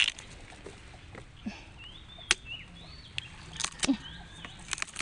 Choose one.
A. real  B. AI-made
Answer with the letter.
A